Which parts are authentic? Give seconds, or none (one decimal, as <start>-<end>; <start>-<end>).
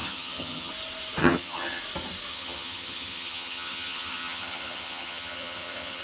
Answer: 0.7-1.2; 1.8-2.3